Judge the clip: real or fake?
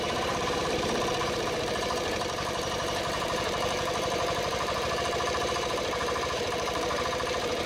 fake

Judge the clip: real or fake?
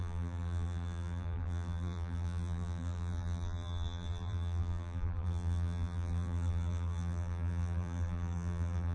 fake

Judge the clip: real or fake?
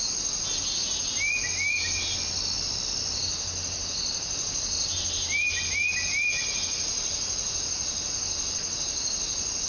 real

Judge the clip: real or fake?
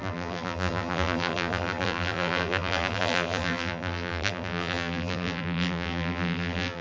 fake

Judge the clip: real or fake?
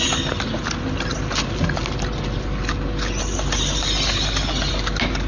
real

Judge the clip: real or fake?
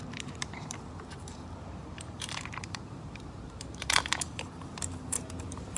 fake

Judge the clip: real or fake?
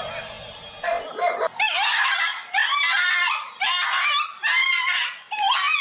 real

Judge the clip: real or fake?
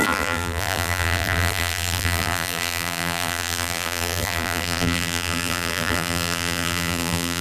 fake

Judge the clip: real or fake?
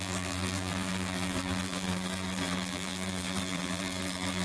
fake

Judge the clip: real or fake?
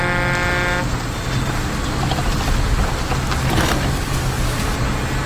real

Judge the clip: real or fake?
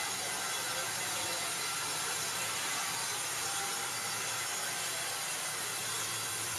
fake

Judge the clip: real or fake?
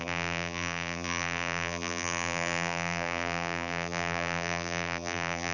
fake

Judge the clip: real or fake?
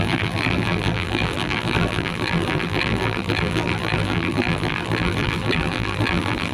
fake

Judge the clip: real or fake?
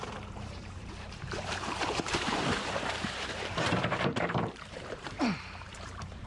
fake